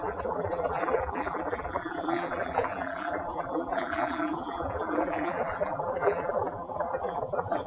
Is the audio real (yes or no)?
no